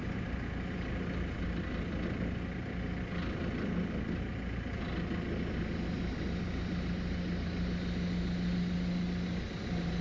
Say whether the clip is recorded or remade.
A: recorded